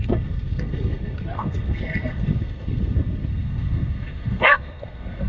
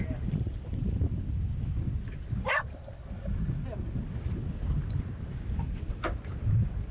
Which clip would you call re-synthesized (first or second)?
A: first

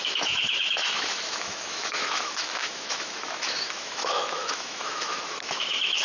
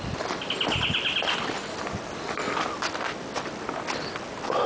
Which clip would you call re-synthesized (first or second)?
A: first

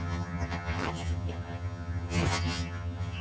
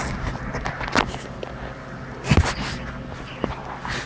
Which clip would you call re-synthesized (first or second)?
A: first